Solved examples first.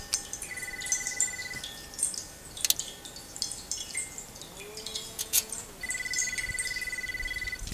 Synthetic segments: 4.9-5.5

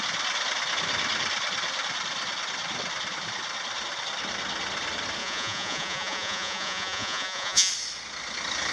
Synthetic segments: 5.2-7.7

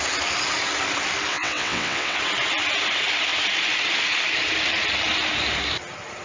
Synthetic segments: 1.3-2.2